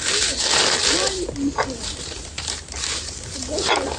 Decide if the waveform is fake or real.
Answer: fake